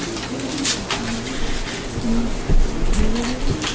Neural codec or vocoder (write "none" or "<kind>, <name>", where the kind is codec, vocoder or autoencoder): none